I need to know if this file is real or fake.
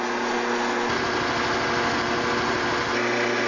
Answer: real